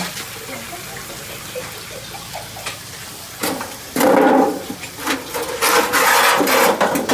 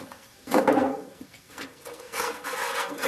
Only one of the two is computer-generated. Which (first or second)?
second